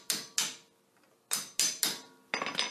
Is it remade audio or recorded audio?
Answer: recorded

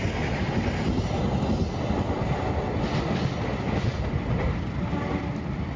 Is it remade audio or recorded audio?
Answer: recorded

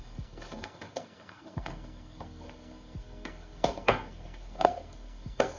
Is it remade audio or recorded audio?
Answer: remade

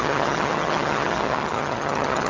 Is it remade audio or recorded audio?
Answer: remade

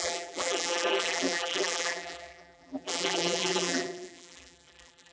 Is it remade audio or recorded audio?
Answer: remade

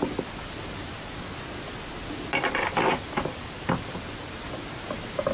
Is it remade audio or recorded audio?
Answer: recorded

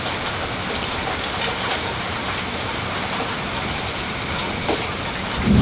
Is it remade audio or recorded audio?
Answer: recorded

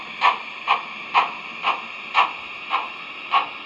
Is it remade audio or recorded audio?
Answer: recorded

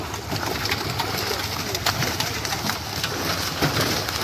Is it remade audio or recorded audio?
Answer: recorded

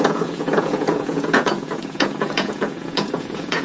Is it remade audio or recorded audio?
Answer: remade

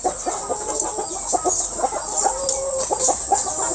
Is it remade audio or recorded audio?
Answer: recorded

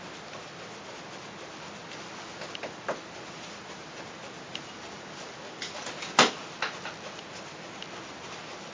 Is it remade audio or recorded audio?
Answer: recorded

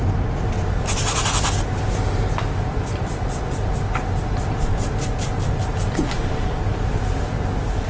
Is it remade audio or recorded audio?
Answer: recorded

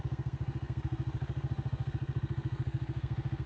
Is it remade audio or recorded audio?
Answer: remade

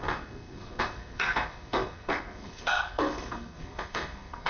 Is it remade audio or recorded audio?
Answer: remade